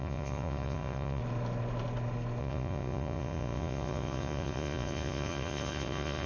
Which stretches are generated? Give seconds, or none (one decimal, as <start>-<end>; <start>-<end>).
0.0-1.2; 2.4-6.3